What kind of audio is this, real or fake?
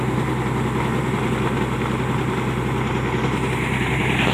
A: real